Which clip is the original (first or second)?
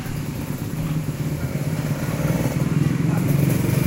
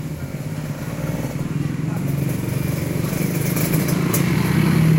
second